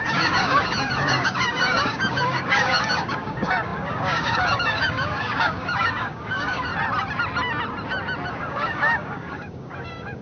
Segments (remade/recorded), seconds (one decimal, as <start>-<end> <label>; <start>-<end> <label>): 0.0-6.7 remade; 6.7-8.3 recorded; 8.3-10.2 remade